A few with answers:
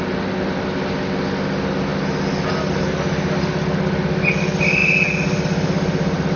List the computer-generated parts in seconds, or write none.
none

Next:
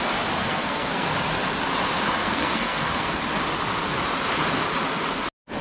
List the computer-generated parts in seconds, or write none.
0.4-1.1 (codec, SNAC); 2.2-3.2

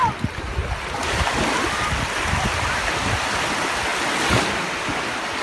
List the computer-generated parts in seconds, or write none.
none

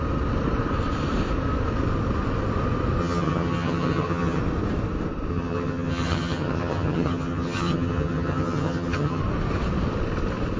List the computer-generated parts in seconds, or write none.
3.0-4.4 (vocoder, HiFi-GAN); 5.3-9.2

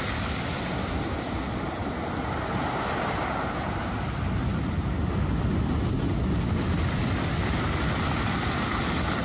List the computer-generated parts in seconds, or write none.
none

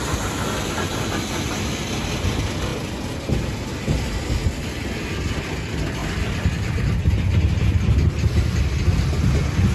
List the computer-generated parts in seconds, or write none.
6.0-7.4 (vocoder, BigVGAN v2)

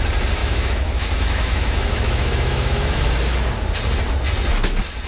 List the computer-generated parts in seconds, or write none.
0.4-3.5 (autoencoder, DAC-VAE)

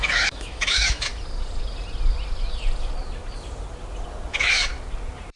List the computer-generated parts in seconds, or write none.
0.0-1.1 (autoencoder, DAC-VAE); 4.3-4.7